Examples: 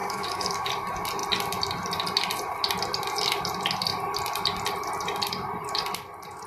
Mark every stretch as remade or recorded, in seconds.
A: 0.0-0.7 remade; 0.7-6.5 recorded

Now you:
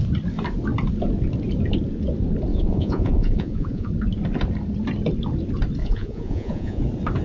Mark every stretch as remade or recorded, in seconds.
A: 0.0-2.5 recorded; 2.5-3.9 remade; 3.9-5.8 recorded; 5.8-6.8 remade; 6.8-7.2 recorded

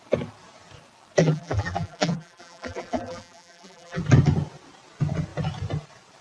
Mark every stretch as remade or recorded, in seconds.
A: 0.0-1.2 recorded; 1.2-4.0 remade; 4.0-6.2 recorded